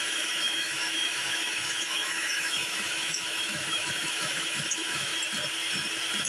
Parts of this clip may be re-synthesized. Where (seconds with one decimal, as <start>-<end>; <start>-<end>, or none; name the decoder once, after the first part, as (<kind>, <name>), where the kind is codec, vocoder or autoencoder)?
0.0-5.1 (autoencoder, DAC-VAE)